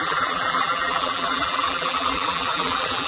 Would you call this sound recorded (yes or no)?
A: no